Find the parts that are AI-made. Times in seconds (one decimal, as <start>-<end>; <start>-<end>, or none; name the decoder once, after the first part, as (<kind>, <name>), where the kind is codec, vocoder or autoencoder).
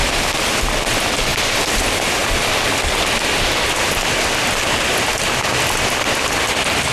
1.3-1.8 (vocoder, BigVGAN v2); 2.2-6.3